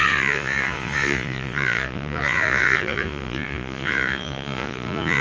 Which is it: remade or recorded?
remade